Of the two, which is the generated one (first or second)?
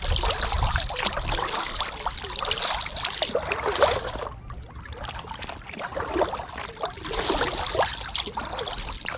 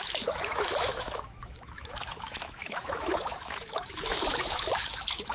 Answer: second